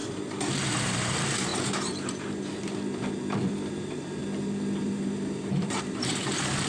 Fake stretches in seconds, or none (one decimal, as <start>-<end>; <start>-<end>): 0.8-1.5; 3.7-4.2; 4.8-6.7